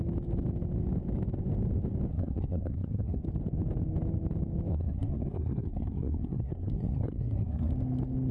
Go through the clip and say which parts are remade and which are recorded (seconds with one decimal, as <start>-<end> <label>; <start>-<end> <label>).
0.0-2.1 recorded; 2.1-3.2 remade; 3.2-4.7 recorded; 4.7-7.7 remade; 7.7-8.3 recorded